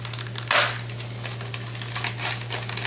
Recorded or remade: recorded